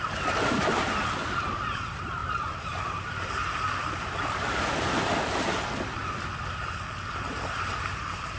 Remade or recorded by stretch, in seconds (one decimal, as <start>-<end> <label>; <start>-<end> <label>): 0.0-6.0 remade; 6.0-7.7 recorded; 7.7-8.4 remade